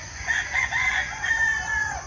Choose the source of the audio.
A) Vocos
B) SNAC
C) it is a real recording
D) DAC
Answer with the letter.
A